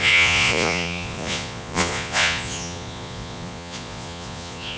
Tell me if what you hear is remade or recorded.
remade